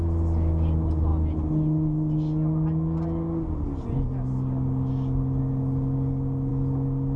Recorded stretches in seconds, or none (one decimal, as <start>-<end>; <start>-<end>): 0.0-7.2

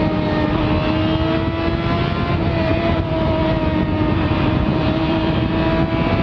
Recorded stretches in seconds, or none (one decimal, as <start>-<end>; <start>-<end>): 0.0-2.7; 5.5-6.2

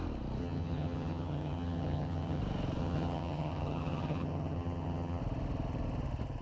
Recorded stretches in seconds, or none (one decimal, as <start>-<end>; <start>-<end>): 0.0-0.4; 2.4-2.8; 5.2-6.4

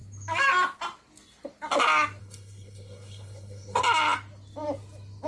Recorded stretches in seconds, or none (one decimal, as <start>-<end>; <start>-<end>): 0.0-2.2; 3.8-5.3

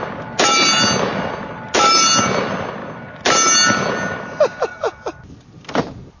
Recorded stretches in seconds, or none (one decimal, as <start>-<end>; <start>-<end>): 0.0-6.2

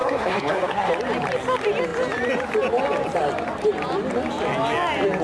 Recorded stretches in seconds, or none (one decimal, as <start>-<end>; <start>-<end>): 0.9-5.2

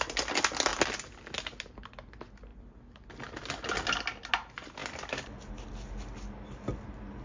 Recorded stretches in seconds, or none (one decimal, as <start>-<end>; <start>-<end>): 0.0-7.2

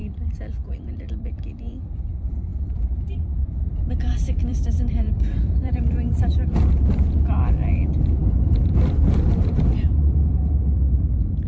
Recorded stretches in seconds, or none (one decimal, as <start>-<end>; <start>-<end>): none